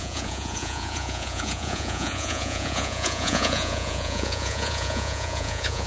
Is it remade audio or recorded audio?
remade